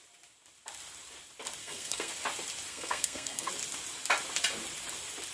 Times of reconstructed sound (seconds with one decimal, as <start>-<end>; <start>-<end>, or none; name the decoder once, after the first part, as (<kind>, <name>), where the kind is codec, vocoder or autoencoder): 1.6-2.1 (codec, SNAC); 2.7-3.5